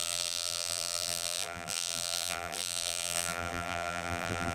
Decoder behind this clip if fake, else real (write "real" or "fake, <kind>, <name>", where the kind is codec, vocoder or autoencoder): fake, vocoder, BigVGAN v2